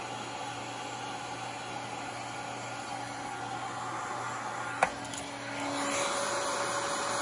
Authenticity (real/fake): real